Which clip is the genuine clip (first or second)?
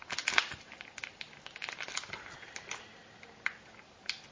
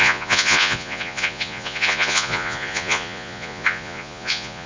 first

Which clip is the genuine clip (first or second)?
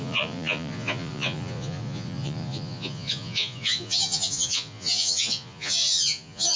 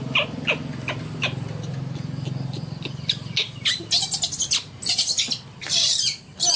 second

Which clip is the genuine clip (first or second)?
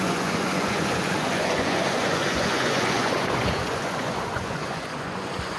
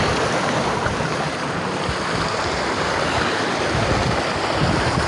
second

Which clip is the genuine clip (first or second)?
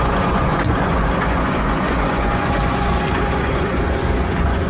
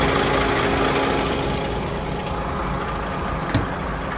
second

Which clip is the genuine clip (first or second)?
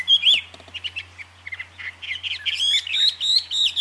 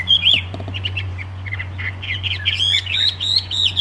first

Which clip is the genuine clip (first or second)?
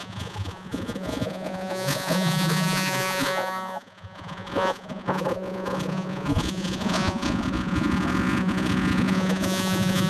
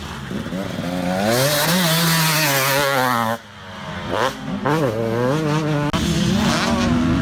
second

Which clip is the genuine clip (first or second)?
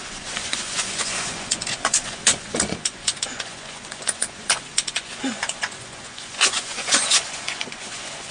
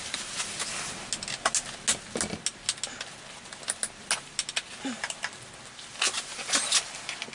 second